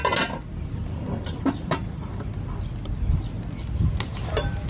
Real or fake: real